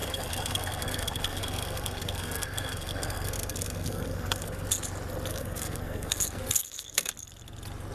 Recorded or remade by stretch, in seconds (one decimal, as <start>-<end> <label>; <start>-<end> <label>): 0.0-4.7 remade; 4.7-5.3 recorded; 5.3-7.1 remade; 7.1-7.9 recorded